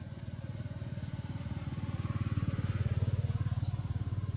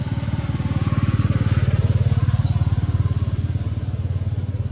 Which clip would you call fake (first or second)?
first